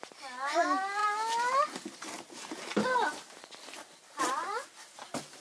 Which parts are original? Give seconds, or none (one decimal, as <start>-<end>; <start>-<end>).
0.0-5.4